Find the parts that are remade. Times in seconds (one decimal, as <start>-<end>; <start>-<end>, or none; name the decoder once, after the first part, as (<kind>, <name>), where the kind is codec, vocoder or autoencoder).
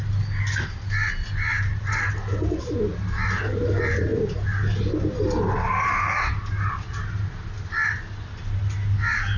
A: none